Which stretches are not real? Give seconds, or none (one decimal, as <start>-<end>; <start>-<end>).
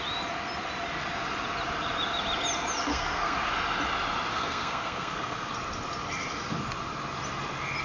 2.9-3.5; 4.3-5.5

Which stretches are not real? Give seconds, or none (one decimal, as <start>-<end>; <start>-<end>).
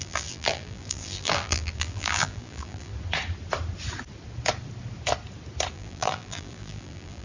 0.0-2.9; 5.7-7.2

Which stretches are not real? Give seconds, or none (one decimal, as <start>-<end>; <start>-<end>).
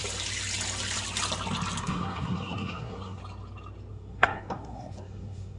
1.8-3.2; 3.9-5.6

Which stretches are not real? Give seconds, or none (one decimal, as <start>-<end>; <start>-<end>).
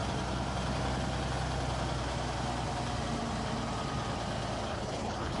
4.7-5.4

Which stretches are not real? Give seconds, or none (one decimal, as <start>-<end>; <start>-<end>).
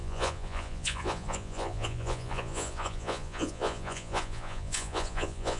0.0-5.6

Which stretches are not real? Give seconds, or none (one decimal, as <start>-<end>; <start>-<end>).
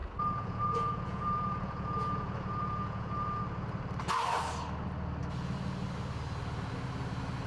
0.0-3.4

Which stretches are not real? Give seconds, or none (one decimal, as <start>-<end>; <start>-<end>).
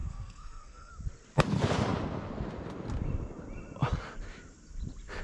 0.0-0.9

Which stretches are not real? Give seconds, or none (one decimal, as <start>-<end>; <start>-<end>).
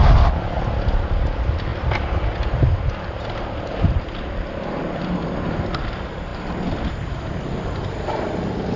none